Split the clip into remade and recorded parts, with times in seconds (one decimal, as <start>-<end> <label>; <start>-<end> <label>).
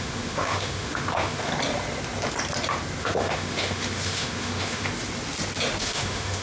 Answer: 0.0-1.5 remade; 1.5-3.0 recorded; 3.0-4.9 remade; 4.9-5.8 recorded; 5.8-6.4 remade